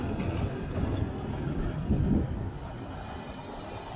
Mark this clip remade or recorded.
recorded